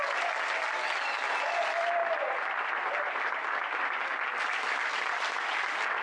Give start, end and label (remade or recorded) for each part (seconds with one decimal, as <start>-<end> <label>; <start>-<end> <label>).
0.0-6.0 recorded